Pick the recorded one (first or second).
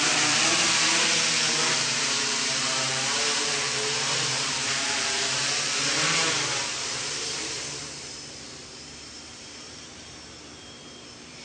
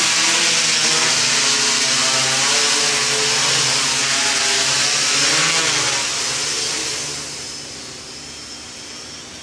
second